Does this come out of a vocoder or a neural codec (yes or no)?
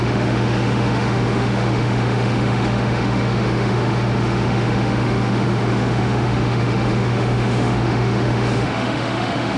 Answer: yes